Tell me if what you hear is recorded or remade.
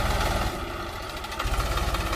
recorded